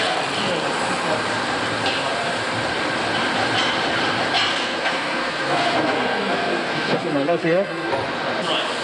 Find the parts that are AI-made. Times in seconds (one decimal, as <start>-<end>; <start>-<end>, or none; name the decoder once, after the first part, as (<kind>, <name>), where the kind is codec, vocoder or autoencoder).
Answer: 4.5-7.9 (codec, SNAC)